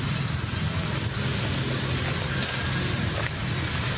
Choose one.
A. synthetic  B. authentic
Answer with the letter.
B